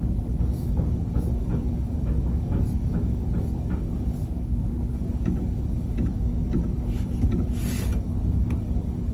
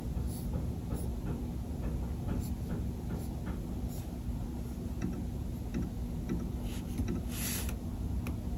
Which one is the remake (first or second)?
first